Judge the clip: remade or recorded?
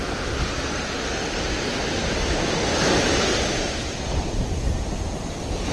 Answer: recorded